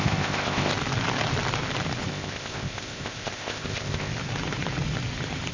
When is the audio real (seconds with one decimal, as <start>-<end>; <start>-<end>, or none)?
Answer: 0.7-2.1; 4.1-5.5